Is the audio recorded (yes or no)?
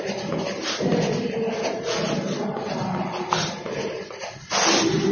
yes